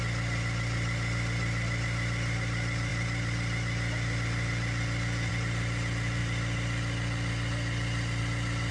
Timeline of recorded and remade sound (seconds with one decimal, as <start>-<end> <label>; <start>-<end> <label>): 0.0-8.7 recorded

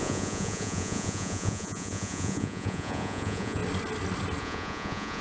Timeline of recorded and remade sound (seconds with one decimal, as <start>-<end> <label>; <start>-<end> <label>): 0.0-3.6 remade; 3.6-4.4 recorded; 4.4-5.2 remade

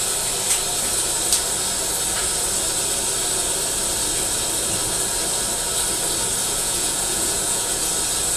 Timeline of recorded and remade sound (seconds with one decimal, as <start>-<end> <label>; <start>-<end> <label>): 0.0-6.4 recorded; 6.4-7.9 remade; 7.9-8.4 recorded